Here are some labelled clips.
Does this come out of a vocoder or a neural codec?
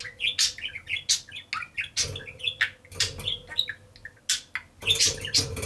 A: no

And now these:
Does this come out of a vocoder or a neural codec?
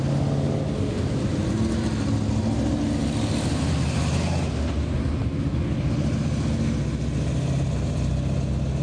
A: no